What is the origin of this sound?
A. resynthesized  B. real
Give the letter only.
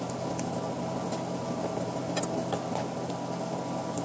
B